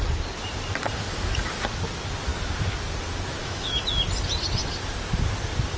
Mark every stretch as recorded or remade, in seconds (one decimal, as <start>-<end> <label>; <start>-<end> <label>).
0.0-3.4 recorded; 3.4-3.9 remade; 3.9-5.8 recorded